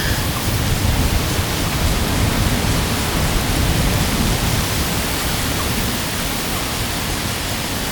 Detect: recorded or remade remade